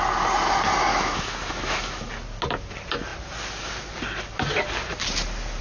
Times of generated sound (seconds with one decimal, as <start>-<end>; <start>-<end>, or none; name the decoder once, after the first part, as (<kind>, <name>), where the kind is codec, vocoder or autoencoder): 0.9-2.1 (autoencoder, DAC-VAE)